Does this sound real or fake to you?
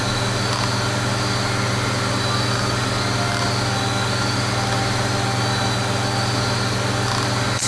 real